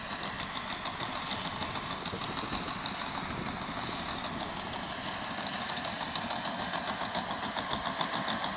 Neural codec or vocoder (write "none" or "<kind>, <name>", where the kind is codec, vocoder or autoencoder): none